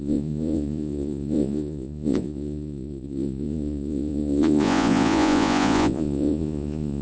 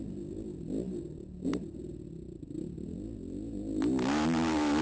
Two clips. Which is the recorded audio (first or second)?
second